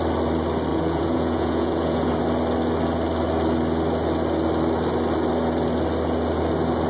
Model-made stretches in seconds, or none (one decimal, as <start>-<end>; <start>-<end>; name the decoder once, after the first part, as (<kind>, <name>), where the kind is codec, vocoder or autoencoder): 0.7-2.2 (vocoder, Vocos)